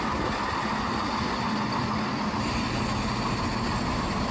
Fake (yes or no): no